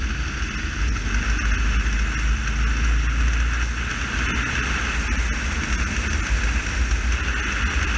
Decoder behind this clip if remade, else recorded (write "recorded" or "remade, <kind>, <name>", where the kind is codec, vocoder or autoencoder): recorded